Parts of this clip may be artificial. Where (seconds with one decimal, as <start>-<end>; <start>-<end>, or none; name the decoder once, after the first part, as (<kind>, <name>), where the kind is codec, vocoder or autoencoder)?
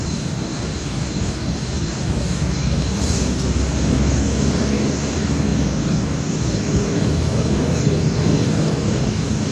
0.0-9.5 (codec, DAC)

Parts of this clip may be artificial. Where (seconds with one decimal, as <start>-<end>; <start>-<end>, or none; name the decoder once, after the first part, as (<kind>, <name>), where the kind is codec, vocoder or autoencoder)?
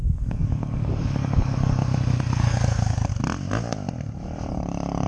0.0-1.8 (codec, DAC); 2.4-3.1; 4.5-5.1